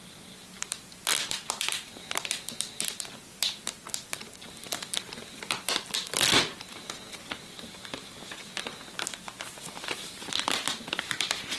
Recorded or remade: recorded